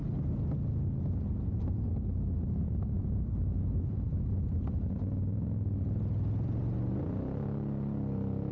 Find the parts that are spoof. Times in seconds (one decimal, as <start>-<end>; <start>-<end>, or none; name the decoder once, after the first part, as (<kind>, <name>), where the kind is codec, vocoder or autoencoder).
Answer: 3.4-4.8 (vocoder, BigVGAN v2)